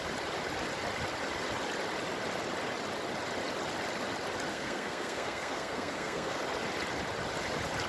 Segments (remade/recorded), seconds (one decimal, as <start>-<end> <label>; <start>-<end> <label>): 0.0-4.5 recorded; 4.5-6.4 remade; 6.4-7.9 recorded

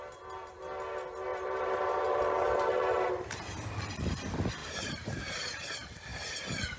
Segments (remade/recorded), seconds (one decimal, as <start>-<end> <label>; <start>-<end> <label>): 0.0-1.3 recorded; 1.3-2.7 remade; 2.7-4.6 recorded; 4.6-5.2 remade; 5.2-6.8 recorded

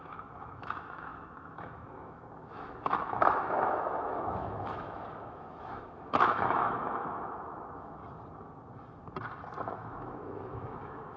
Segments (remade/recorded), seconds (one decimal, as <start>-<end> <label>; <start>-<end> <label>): 0.0-8.0 remade; 8.0-9.7 recorded; 9.7-11.2 remade